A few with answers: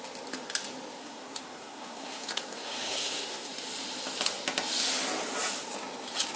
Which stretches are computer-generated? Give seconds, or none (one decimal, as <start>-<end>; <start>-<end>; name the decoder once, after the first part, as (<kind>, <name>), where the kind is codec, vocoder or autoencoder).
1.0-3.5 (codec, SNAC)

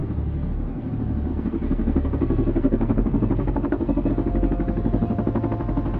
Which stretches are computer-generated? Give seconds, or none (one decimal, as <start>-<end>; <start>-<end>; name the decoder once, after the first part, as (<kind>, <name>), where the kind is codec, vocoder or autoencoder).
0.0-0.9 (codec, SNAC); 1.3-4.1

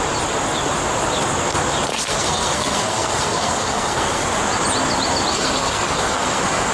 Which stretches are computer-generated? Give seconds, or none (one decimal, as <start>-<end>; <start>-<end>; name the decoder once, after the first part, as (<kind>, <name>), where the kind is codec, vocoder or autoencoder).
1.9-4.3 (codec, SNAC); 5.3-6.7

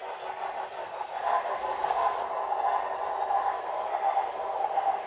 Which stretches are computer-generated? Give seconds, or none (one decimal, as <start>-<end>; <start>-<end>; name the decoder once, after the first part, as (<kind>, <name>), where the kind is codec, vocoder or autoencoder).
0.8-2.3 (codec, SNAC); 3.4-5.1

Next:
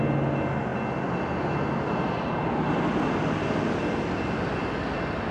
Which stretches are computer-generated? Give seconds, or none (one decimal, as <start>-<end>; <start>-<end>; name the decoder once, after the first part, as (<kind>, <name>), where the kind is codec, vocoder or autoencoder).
none

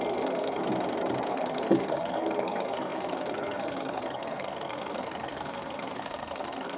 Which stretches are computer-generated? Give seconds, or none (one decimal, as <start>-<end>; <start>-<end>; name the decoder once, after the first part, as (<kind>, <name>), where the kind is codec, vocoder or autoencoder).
0.0-0.6 (codec, SNAC); 1.3-6.8

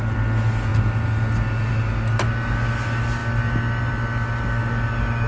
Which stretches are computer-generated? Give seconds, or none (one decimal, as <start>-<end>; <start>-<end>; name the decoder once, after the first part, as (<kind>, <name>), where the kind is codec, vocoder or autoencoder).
none